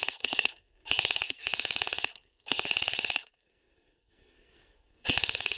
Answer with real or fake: fake